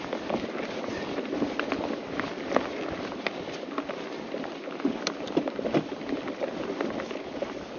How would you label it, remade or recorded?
recorded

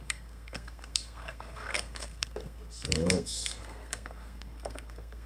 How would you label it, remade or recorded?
remade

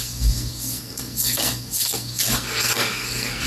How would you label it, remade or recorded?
remade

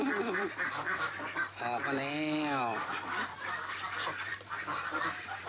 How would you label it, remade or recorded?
remade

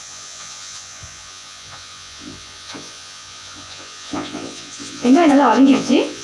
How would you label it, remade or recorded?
remade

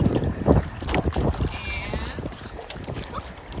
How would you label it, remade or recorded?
remade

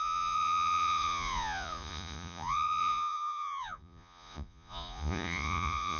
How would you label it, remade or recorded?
remade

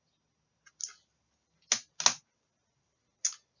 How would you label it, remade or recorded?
recorded